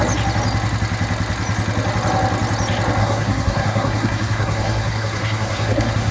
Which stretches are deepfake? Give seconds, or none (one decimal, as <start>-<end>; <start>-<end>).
3.0-6.1